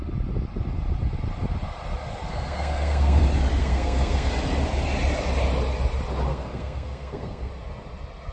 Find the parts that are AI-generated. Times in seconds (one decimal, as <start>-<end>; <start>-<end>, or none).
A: 2.3-3.2; 3.6-4.3; 6.3-7.5